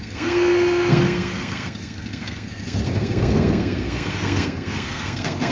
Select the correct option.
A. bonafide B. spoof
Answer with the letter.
B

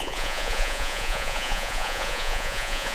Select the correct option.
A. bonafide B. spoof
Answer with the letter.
B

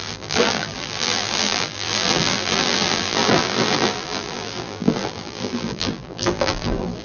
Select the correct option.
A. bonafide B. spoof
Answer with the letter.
B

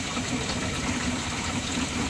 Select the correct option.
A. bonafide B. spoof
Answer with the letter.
B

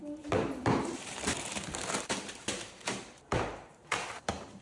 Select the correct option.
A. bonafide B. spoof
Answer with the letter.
B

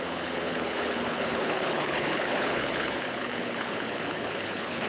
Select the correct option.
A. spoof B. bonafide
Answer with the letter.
A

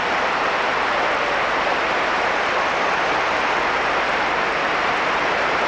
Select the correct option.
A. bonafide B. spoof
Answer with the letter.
B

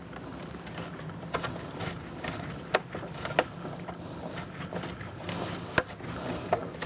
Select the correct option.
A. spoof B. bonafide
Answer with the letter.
B